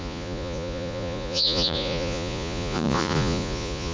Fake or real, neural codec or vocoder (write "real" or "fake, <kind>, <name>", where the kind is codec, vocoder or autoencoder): fake, vocoder, Vocos